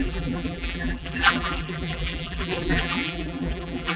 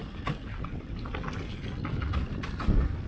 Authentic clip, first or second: second